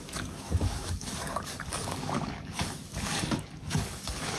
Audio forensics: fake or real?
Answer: fake